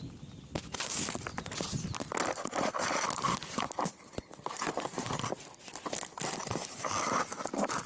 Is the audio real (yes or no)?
yes